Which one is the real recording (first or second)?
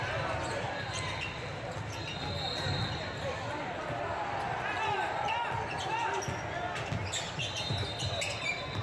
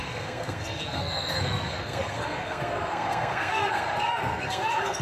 first